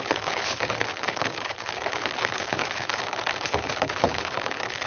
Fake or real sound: fake